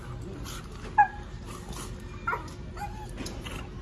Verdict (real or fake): real